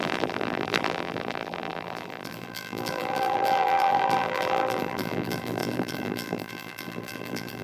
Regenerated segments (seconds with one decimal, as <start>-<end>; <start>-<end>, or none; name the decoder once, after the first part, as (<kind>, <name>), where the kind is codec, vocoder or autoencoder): 0.0-7.6 (vocoder, BigVGAN v2)